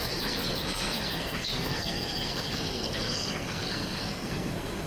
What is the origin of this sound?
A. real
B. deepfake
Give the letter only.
B